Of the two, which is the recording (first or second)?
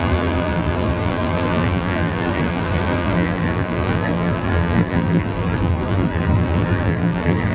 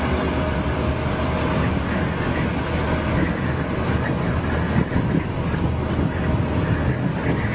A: second